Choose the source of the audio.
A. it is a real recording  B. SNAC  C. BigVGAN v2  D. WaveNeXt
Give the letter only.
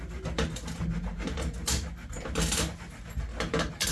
A